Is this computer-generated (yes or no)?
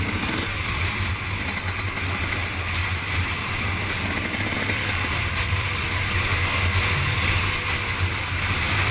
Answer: no